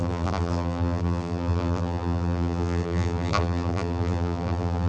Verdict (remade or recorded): remade